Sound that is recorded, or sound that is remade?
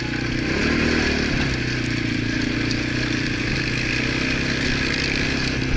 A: recorded